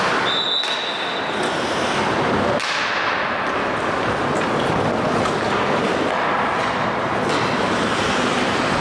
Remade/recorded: recorded